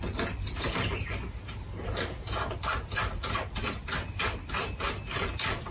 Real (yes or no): yes